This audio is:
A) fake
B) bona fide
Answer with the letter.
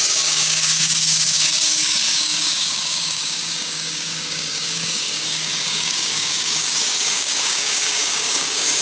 A